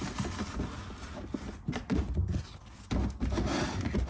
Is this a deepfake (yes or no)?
no